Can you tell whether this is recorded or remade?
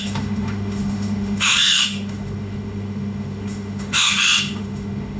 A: remade